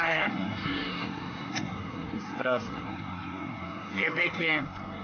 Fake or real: fake